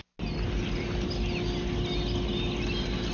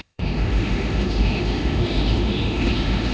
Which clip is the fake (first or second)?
second